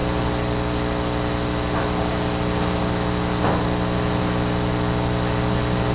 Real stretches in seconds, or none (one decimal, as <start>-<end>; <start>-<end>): 0.0-5.9